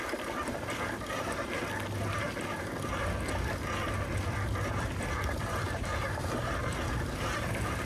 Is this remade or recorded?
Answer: recorded